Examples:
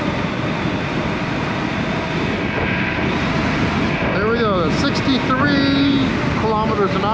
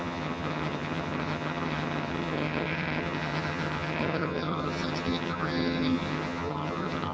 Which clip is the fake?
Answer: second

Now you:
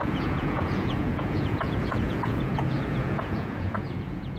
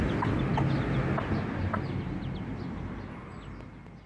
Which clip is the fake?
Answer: first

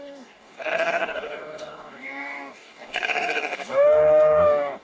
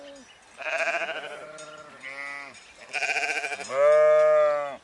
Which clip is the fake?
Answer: first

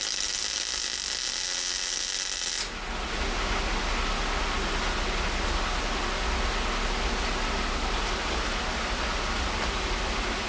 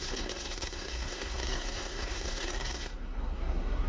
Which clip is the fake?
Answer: second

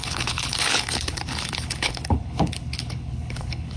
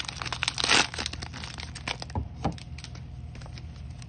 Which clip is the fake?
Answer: first